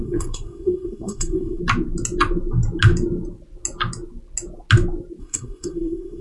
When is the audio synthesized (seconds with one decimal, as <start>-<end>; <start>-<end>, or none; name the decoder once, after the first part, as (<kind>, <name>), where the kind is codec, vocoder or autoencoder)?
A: 0.0-1.6 (codec, SNAC); 5.2-6.2